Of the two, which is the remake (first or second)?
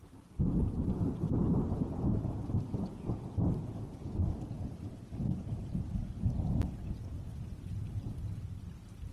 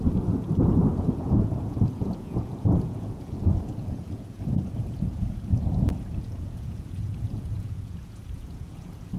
second